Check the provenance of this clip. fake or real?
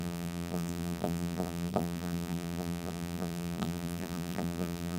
fake